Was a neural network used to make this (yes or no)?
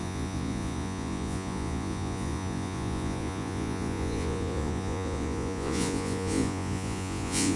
yes